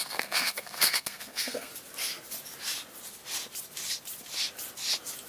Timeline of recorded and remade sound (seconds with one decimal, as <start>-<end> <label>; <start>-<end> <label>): 0.0-1.7 remade; 1.7-5.3 recorded